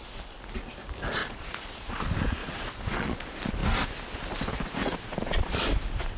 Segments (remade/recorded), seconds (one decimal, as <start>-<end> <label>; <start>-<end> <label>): 0.0-1.2 recorded; 1.2-2.0 remade; 2.0-2.4 recorded; 2.4-3.2 remade; 3.2-4.8 recorded; 4.8-5.6 remade; 5.6-6.2 recorded